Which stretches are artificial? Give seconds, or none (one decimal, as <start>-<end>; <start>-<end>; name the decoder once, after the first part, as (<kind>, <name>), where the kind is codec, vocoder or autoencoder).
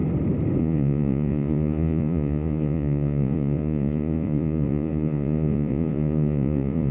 0.6-6.9 (vocoder, Vocos)